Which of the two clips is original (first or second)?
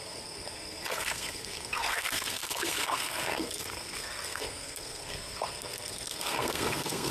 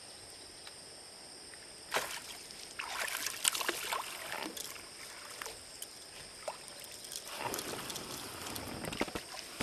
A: second